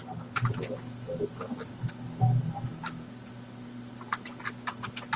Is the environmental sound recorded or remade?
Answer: recorded